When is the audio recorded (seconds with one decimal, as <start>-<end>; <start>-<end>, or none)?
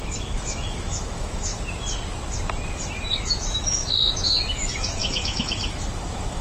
1.5-3.2